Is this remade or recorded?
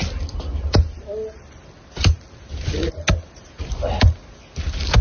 recorded